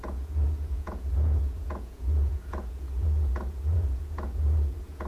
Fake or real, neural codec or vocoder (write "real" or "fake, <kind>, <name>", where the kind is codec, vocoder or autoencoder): fake, vocoder, Vocos